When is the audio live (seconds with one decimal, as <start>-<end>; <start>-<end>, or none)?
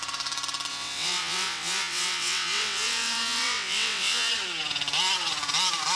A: 0.0-0.7; 4.3-6.0